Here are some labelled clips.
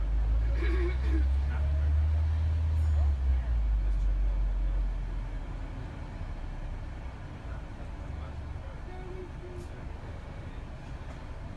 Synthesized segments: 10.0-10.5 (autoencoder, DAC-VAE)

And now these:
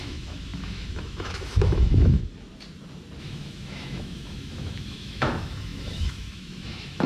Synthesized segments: 0.0-2.2 (autoencoder, DAC-VAE); 3.2-7.1

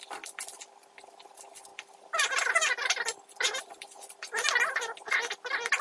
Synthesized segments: none

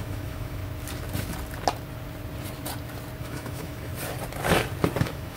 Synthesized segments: 0.0-0.6 (autoencoder, DAC-VAE); 3.2-3.9; 5.0-5.4

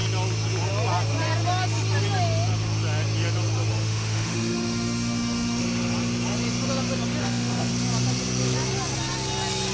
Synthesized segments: 3.7-5.6 (autoencoder, DAC-VAE); 7.2-7.7

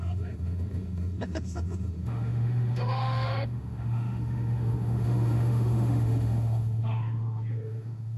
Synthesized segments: 0.0-8.2 (autoencoder, DAC-VAE)